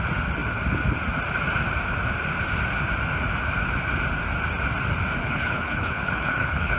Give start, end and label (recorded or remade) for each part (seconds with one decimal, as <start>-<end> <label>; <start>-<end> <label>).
0.0-5.2 recorded; 5.2-6.8 remade